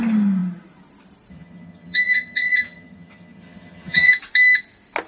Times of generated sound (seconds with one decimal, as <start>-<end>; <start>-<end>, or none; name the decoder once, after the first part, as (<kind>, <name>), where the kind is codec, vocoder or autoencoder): 1.3-4.1 (vocoder, HiFi-GAN)